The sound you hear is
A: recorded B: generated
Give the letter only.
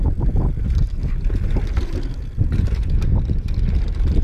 A